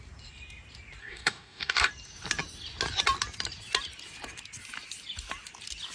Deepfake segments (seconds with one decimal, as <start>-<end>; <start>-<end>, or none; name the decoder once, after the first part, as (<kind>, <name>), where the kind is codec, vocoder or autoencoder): 1.0-1.9 (codec, DAC)

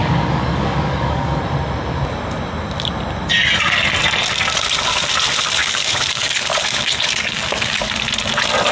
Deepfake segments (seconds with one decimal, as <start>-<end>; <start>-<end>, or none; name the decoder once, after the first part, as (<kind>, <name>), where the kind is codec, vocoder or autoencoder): 0.0-1.4 (codec, DAC); 5.6-7.9